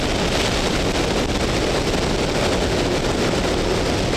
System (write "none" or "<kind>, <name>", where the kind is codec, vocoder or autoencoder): none